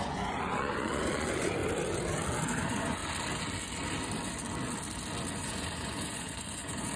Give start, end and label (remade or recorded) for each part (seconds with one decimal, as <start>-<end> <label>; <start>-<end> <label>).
0.0-1.6 remade; 1.6-2.6 recorded; 2.6-3.0 remade; 3.0-5.4 recorded; 5.4-7.0 remade